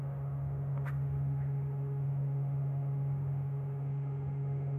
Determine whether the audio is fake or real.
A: fake